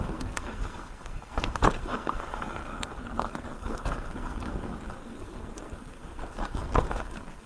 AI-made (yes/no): yes